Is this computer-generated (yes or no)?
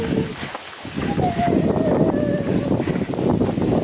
no